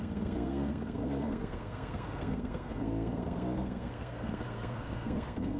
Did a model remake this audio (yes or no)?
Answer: yes